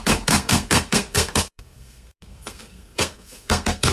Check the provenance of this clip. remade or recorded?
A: remade